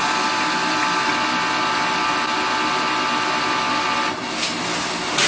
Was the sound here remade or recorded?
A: recorded